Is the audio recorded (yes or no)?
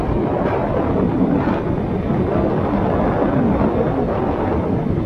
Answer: yes